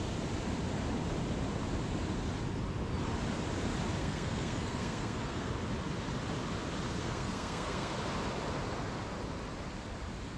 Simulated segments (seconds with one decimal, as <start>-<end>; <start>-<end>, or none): 4.0-5.5; 7.0-7.9